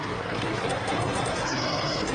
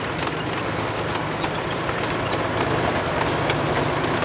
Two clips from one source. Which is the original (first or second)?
second